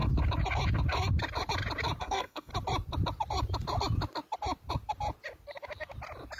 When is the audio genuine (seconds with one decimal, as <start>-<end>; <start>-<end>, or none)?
0.0-2.0; 2.5-6.4